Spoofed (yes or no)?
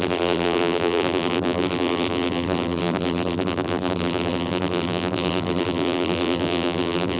yes